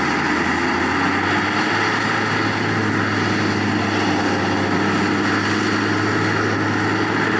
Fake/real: real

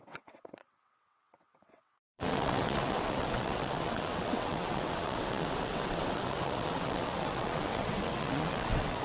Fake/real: fake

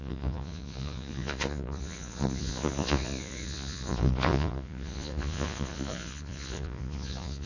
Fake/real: fake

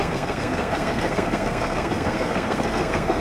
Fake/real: fake